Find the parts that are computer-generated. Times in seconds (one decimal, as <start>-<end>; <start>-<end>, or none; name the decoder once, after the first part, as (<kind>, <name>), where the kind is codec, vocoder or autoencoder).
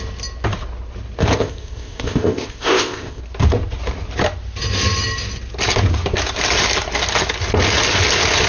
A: 1.2-3.2 (codec, ZipCodec)